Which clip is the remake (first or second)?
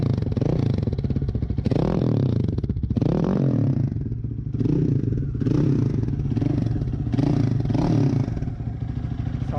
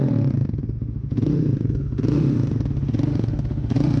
second